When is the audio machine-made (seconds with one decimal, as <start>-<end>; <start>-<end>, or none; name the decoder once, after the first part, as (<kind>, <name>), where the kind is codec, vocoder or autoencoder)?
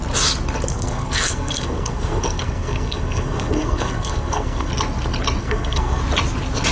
0.7-4.7 (codec, SNAC); 5.4-6.0